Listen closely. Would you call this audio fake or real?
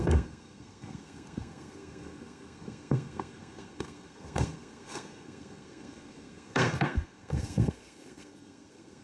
fake